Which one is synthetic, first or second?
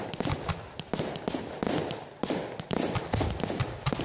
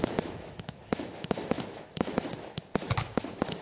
second